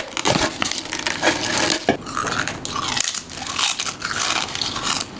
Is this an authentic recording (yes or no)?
yes